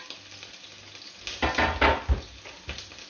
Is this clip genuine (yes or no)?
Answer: yes